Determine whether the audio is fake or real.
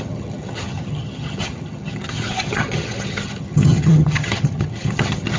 fake